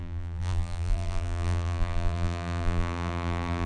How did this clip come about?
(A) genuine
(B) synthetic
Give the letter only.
B